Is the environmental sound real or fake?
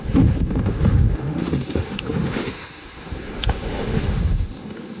fake